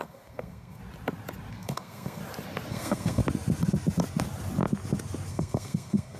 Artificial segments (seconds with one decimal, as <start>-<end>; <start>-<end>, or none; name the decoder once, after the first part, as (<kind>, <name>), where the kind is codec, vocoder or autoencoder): 0.0-0.8 (codec, SNAC); 1.5-2.2; 2.7-3.2; 5.3-6.2

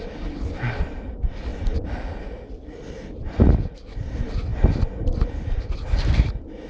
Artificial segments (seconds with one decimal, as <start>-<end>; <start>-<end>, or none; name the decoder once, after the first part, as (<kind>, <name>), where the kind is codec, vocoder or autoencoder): none